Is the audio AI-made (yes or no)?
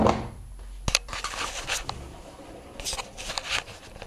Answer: no